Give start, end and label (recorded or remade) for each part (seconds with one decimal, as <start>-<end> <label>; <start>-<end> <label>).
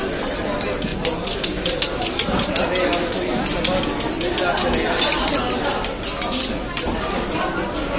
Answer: 0.0-8.0 recorded